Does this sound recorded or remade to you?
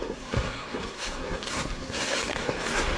remade